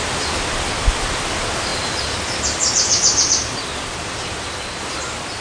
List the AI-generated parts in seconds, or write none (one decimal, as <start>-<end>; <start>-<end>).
none